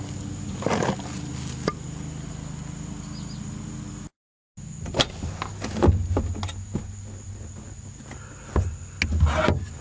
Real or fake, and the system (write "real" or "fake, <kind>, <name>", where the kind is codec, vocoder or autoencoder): real